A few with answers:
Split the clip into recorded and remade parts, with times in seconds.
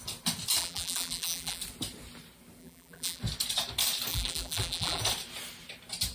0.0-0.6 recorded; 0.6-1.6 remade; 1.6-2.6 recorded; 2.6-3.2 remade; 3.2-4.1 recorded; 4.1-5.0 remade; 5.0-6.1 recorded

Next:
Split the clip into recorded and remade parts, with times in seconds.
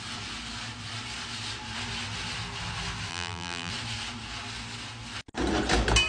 0.0-3.1 recorded; 3.1-3.7 remade; 3.7-6.1 recorded